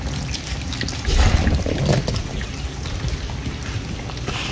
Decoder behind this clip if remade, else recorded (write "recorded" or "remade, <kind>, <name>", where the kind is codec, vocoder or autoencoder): recorded